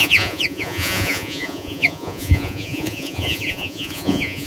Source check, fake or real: fake